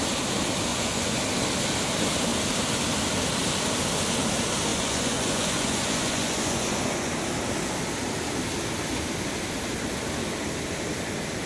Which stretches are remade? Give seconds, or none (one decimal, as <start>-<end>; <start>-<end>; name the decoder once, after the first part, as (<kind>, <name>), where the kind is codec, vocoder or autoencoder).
0.7-1.2 (vocoder, Vocos); 4.7-7.1